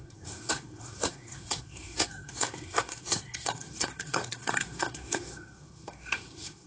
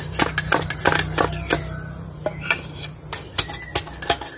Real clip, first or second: second